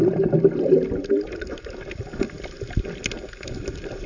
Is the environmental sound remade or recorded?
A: recorded